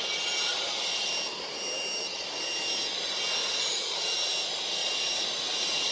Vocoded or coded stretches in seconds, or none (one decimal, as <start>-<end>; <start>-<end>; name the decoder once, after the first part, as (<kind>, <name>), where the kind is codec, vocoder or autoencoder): 0.5-1.1 (vocoder, Vocos); 3.4-4.1; 4.8-5.9